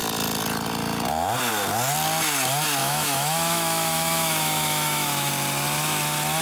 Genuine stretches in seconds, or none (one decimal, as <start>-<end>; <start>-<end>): 0.0-2.8; 5.3-6.4